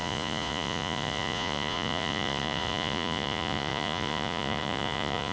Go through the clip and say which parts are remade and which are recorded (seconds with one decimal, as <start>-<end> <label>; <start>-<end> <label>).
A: 0.0-5.3 remade